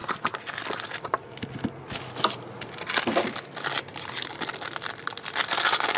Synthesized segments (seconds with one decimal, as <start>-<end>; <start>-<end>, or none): none